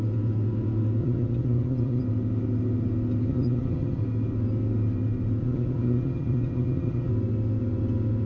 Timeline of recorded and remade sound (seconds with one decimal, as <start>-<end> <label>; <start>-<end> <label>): 0.0-1.0 recorded; 1.0-2.0 remade; 2.0-3.3 recorded; 3.3-4.0 remade; 4.0-5.4 recorded; 5.4-7.1 remade; 7.1-8.3 recorded

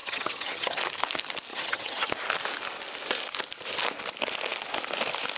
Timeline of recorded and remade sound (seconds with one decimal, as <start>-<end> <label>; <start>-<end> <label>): 0.0-0.8 remade; 0.8-1.5 recorded; 1.5-2.1 remade; 2.1-5.4 recorded

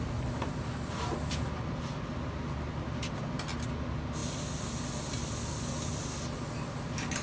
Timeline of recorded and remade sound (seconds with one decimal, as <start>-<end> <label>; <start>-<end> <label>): 0.0-7.2 recorded